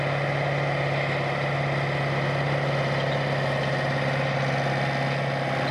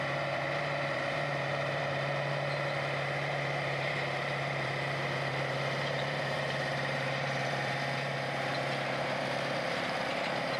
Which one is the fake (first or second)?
second